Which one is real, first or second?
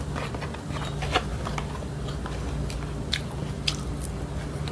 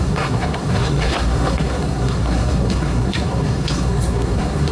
first